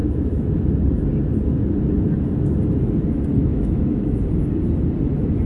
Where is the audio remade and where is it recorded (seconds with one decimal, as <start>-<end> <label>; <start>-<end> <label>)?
0.0-0.7 remade; 0.7-3.5 recorded; 3.5-4.2 remade; 4.2-5.5 recorded